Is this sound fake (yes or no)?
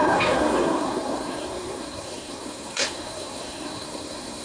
yes